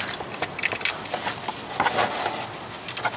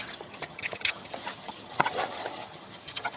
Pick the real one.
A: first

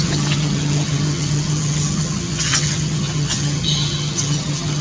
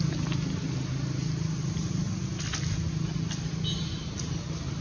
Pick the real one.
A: second